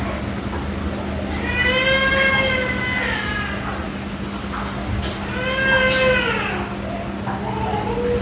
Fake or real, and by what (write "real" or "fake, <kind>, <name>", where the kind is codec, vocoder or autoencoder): real